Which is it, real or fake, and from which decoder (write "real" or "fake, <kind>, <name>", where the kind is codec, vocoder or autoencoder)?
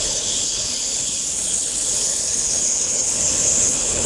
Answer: fake, codec, HILCodec